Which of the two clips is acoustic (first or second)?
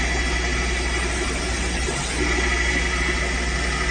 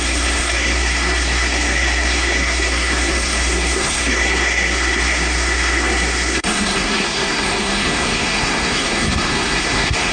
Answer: first